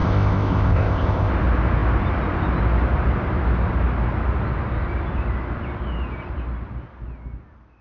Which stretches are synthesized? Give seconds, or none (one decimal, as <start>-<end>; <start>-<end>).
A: 0.0-1.3